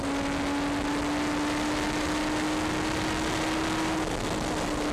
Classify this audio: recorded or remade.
recorded